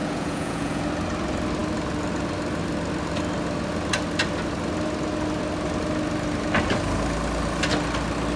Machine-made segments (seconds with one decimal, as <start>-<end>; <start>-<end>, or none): 0.0-0.8